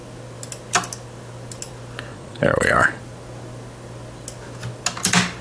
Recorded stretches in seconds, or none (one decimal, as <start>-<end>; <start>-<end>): 0.0-2.1; 3.0-5.4